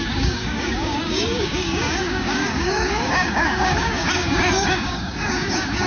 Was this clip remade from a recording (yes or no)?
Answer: yes